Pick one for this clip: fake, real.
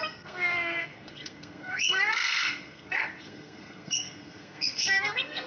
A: fake